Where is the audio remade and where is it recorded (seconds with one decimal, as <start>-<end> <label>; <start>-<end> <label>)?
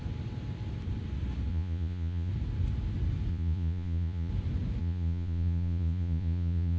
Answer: 0.0-1.5 recorded; 1.5-2.3 remade; 2.3-3.3 recorded; 3.3-4.3 remade; 4.3-4.8 recorded; 4.8-6.8 remade